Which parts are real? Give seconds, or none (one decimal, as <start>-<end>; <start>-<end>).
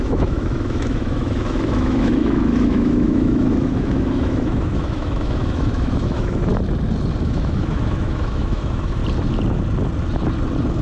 6.5-7.2; 9.0-10.8